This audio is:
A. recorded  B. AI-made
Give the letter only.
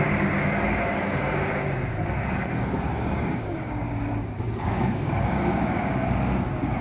B